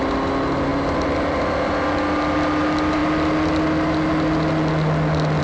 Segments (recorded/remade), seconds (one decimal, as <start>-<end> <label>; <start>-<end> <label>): 0.0-5.4 recorded

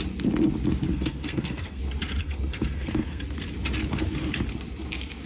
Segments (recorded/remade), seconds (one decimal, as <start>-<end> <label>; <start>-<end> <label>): 0.0-0.9 recorded; 0.9-1.8 remade; 1.8-2.2 recorded; 2.2-3.2 remade; 3.2-5.3 recorded

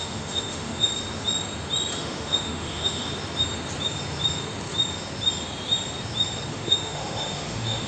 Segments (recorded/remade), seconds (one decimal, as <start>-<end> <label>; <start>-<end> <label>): 0.0-0.9 remade; 0.9-2.0 recorded; 2.0-3.0 remade; 3.0-6.5 recorded; 6.5-7.9 remade